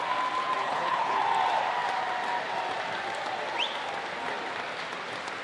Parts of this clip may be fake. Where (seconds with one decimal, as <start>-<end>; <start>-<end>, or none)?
0.6-1.2